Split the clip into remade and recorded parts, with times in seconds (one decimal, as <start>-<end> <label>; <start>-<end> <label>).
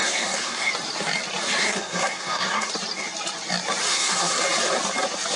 0.0-0.7 remade; 0.7-1.6 recorded; 1.6-2.7 remade; 2.7-3.9 recorded; 3.9-4.4 remade; 4.4-5.4 recorded